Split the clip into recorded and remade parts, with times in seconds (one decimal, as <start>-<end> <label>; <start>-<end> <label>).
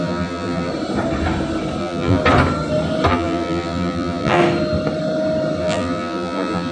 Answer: 0.0-0.7 remade; 0.7-1.8 recorded; 1.8-2.2 remade; 2.2-3.1 recorded; 3.1-4.4 remade; 4.4-5.6 recorded; 5.6-6.7 remade